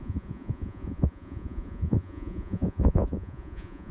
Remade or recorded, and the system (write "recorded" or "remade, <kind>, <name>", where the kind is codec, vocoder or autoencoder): remade, vocoder, Vocos